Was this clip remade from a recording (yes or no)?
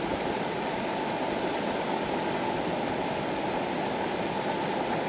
no